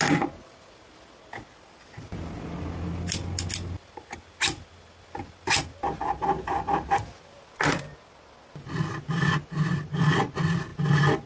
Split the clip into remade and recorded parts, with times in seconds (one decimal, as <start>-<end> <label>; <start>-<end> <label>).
0.0-11.3 recorded